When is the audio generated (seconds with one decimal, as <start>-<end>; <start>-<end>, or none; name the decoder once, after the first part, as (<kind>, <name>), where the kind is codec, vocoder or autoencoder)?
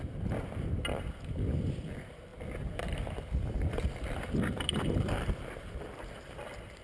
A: none